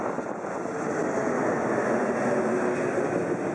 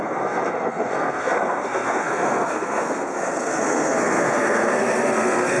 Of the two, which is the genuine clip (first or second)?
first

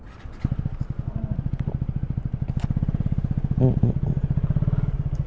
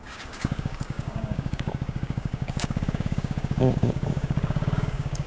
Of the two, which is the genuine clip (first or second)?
first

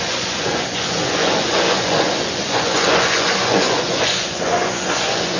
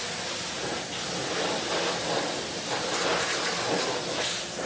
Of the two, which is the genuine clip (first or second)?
second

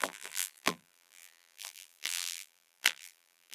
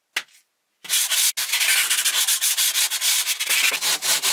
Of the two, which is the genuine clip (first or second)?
second